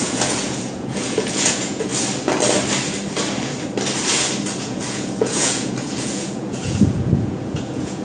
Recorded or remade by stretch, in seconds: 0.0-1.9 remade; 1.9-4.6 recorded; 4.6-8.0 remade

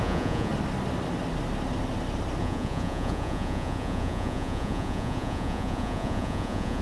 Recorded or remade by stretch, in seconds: 0.0-0.5 remade; 0.5-2.4 recorded; 2.4-6.8 remade

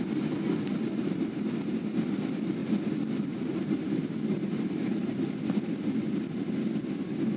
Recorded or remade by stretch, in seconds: 0.0-7.4 recorded

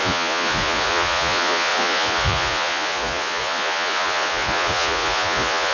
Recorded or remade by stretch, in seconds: 0.0-5.7 remade

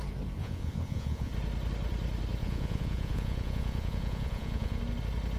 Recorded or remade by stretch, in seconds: 0.0-0.4 recorded; 0.4-1.3 remade; 1.3-2.4 recorded; 2.4-4.8 remade; 4.8-5.4 recorded

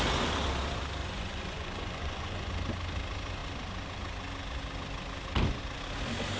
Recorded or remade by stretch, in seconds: 0.0-1.0 recorded; 1.0-2.5 remade; 2.5-6.4 recorded

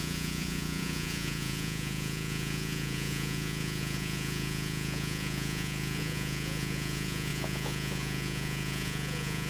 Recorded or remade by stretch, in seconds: 0.0-9.5 remade

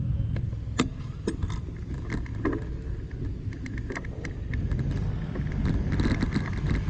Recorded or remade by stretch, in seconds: 0.0-6.9 recorded